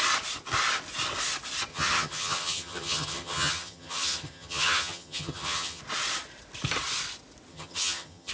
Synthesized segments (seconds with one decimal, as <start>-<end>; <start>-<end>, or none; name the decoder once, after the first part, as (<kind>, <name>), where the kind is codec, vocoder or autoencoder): 1.7-5.8 (vocoder, HiFi-GAN); 7.5-8.3